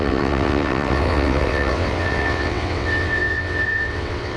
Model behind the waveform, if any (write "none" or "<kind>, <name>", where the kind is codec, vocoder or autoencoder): vocoder, WaveNeXt